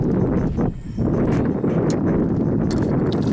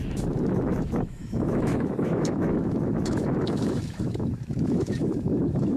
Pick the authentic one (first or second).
first